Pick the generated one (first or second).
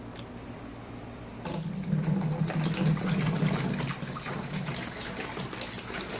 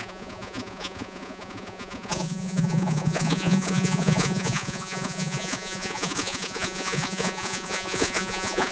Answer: second